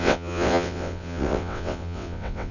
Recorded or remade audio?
remade